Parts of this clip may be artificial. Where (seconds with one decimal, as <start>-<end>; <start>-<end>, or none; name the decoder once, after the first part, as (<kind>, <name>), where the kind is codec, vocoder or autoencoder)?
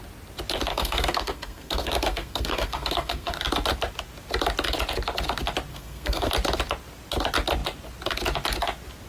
0.7-3.4 (codec, SNAC); 5.7-6.3